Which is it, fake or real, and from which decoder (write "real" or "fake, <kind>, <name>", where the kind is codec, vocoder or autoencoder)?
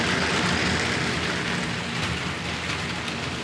real